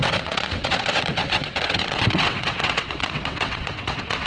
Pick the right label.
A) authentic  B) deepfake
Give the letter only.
B